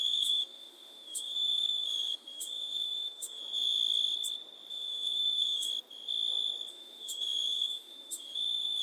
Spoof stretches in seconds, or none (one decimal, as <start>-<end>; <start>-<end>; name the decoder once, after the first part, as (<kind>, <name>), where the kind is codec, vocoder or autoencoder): 0.0-3.4 (autoencoder, DAC-VAE); 4.7-5.7; 6.7-8.8